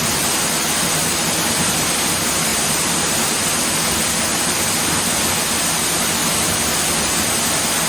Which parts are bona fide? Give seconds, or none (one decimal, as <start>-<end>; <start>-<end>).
0.0-7.9

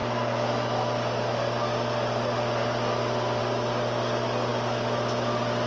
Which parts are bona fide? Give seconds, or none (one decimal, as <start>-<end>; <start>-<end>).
0.0-5.7

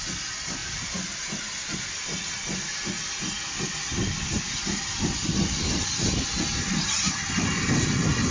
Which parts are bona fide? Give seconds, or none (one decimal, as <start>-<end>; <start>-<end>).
0.0-8.3

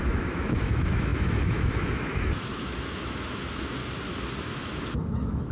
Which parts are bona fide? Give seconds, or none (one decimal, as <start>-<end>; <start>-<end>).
3.8-4.4

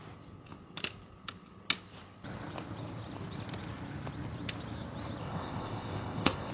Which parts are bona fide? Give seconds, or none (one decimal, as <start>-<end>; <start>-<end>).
0.0-5.2

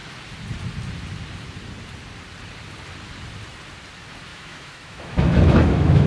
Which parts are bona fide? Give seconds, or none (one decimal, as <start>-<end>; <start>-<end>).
0.0-4.3

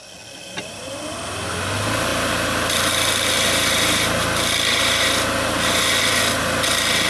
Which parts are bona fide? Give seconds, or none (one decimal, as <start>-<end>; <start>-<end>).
0.0-7.1